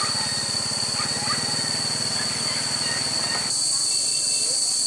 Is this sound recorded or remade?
recorded